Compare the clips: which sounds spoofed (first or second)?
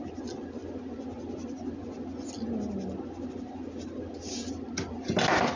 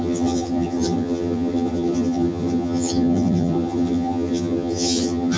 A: second